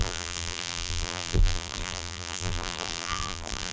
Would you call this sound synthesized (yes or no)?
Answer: yes